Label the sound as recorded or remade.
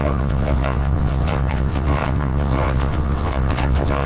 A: remade